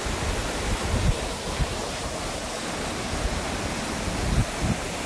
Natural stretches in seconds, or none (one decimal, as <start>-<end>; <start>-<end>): 0.0-0.4; 1.8-5.1